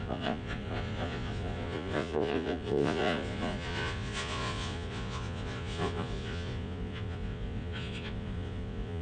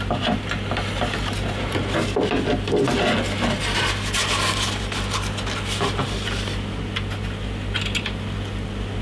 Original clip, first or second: second